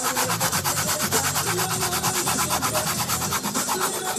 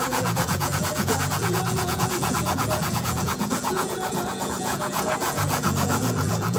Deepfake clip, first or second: second